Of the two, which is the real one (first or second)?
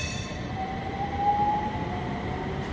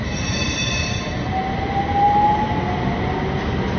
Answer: second